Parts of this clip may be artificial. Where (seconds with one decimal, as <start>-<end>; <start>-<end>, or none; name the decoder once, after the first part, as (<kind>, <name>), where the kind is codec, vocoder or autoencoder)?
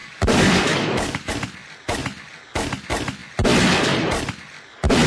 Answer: 0.0-1.3 (codec, DAC)